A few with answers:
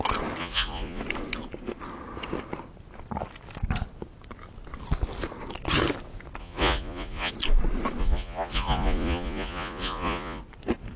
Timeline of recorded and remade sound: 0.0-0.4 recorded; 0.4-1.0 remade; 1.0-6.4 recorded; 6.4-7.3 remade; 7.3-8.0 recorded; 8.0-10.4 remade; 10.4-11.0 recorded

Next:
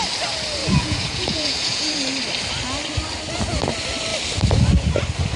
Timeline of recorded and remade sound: 0.0-0.6 recorded; 0.6-2.1 remade; 2.1-5.4 recorded

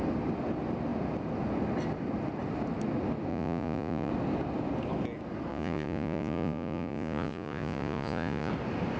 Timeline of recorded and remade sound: 0.0-3.3 recorded; 3.3-4.1 remade; 4.1-5.5 recorded; 5.5-8.5 remade; 8.5-9.0 recorded

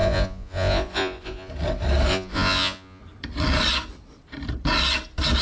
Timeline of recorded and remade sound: 0.0-1.5 remade; 1.5-2.1 recorded; 2.1-3.0 remade; 3.0-5.4 recorded

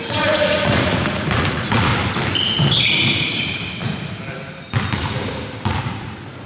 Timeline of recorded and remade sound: 0.0-1.9 remade; 1.9-5.8 recorded; 5.8-6.5 remade